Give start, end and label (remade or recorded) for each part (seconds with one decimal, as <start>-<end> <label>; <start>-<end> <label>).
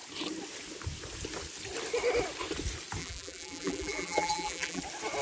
0.0-3.0 recorded; 3.0-4.8 remade; 4.8-5.2 recorded